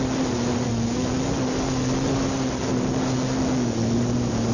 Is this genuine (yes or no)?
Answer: yes